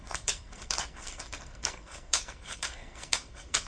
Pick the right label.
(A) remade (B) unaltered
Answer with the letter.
A